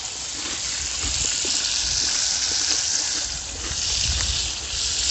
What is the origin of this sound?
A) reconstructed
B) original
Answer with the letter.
B